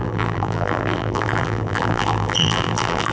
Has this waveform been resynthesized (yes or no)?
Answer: yes